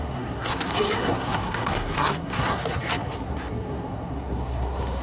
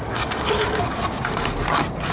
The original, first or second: second